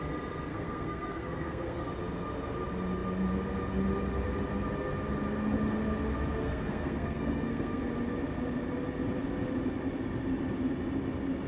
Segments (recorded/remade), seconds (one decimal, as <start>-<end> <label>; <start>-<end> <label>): 0.0-0.5 recorded; 0.5-1.9 remade; 1.9-6.4 recorded; 6.4-7.9 remade; 7.9-11.5 recorded